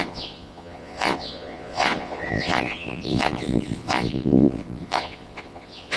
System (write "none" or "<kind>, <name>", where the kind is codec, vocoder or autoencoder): vocoder, Vocos